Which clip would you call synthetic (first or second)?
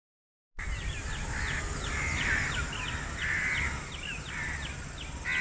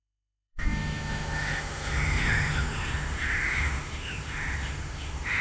second